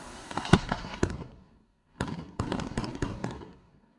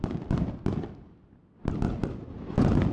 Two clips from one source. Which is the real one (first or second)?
second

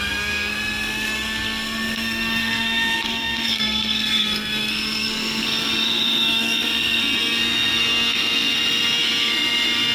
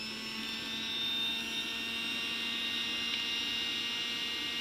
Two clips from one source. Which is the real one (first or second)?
second